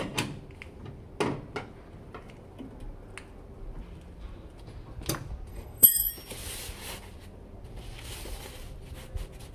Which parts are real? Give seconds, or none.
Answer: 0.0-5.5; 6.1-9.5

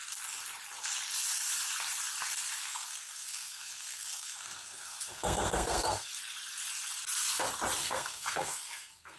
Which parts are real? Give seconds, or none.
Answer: 0.0-2.7; 6.1-7.8

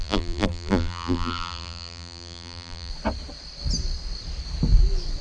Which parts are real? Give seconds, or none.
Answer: 2.9-5.2

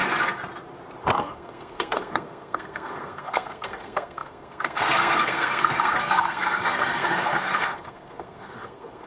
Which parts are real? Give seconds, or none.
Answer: 0.0-1.2

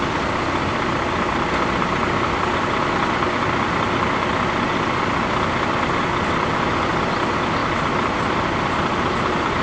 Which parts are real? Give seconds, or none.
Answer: 0.0-7.6

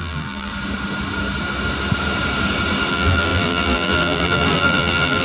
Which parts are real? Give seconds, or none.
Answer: 0.5-2.9

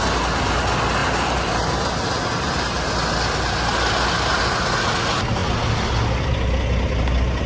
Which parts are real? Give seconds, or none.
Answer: 0.0-1.0; 1.9-7.5

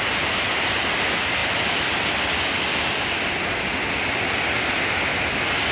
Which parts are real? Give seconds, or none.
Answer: 0.0-5.7